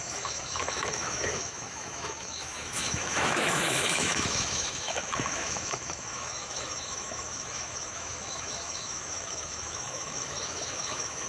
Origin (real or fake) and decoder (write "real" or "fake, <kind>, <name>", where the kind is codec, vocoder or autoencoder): fake, autoencoder, DAC-VAE